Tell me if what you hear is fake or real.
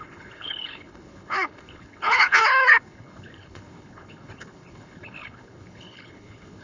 fake